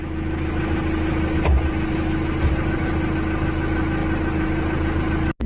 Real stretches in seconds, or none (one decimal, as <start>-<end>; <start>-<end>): 0.0-5.5